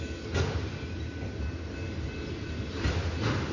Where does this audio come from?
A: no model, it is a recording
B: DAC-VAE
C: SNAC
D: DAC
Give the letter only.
A